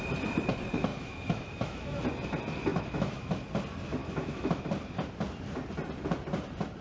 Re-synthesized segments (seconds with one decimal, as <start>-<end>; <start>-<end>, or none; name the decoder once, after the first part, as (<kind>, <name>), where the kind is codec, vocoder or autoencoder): 0.9-2.0 (autoencoder, DAC-VAE); 2.7-3.3; 4.0-4.6